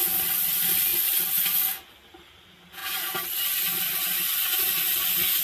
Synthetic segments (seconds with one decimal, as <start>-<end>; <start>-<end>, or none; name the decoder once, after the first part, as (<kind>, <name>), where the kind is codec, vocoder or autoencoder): none